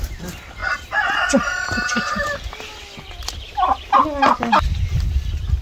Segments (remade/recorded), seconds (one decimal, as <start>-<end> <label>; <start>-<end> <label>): 0.0-5.6 recorded